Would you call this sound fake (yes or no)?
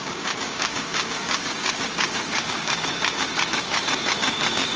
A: yes